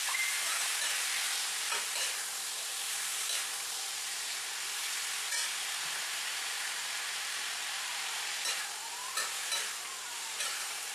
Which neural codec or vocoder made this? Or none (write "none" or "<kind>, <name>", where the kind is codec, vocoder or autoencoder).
vocoder, BigVGAN v2